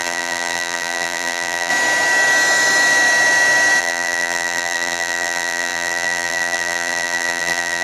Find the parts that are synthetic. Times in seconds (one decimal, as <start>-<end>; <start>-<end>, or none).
0.0-1.7; 3.8-7.8